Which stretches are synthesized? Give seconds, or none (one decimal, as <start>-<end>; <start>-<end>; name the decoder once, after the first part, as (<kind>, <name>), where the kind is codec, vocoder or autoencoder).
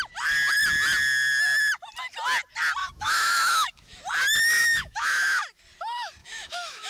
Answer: 2.8-4.0 (autoencoder, DAC-VAE); 4.6-5.6; 6.2-6.9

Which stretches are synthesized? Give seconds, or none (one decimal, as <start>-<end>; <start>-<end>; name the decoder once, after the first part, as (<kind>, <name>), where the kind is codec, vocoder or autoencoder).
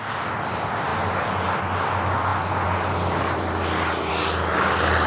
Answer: none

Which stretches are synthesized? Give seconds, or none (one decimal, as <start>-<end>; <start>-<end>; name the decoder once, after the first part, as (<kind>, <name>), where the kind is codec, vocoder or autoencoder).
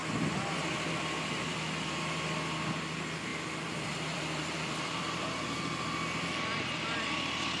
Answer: 3.3-7.6 (vocoder, BigVGAN v2)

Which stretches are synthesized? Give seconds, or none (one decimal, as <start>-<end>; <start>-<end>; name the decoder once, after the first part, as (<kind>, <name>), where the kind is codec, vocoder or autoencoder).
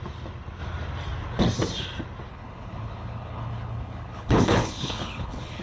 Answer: 2.3-5.6 (codec, HILCodec)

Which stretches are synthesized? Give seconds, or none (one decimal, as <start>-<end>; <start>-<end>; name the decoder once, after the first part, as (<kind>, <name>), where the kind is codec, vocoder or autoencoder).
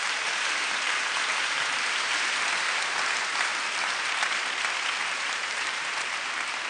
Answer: 0.0-3.5 (vocoder, BigVGAN v2); 5.0-6.7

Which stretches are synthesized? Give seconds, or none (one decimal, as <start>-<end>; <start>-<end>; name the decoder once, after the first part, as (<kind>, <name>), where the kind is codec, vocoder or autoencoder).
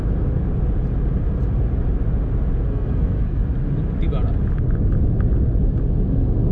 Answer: 2.7-3.4 (codec, SNAC)